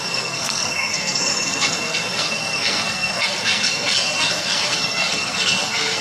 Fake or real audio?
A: fake